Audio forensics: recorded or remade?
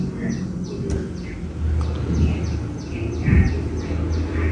recorded